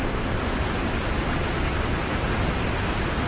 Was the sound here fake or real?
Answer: real